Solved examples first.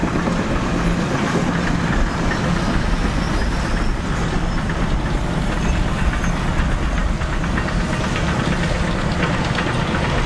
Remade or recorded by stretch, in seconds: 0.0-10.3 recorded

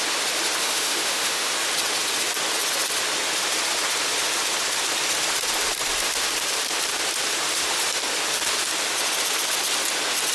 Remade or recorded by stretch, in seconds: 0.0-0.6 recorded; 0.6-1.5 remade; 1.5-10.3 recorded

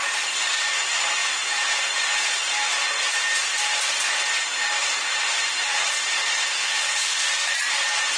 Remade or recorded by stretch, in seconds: 0.0-6.6 recorded; 6.6-7.2 remade; 7.2-8.2 recorded

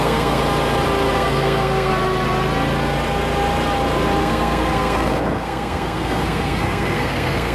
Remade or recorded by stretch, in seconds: 0.0-0.4 remade; 0.4-1.1 recorded; 1.1-1.9 remade; 1.9-4.2 recorded; 4.2-7.5 remade

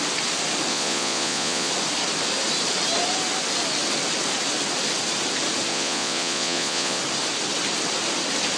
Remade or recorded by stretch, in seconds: 0.0-0.7 recorded; 0.7-1.7 remade; 1.7-5.7 recorded; 5.7-7.0 remade; 7.0-8.6 recorded

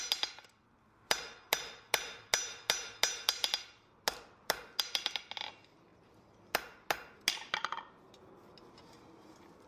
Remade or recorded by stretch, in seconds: 0.0-9.7 recorded